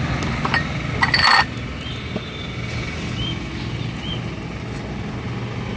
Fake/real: real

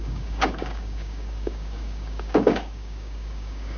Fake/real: fake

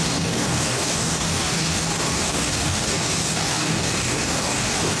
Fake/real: fake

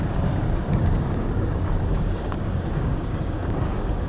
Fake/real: fake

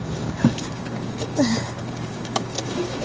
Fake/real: fake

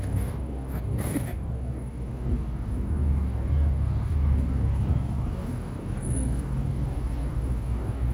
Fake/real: fake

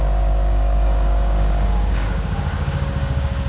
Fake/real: fake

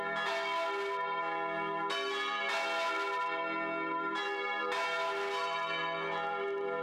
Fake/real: real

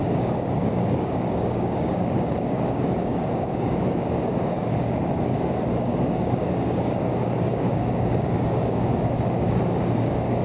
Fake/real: fake